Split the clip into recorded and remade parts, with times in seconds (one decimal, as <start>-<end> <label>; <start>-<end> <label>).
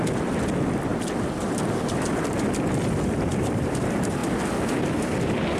0.0-3.3 recorded; 3.3-3.8 remade; 3.8-5.6 recorded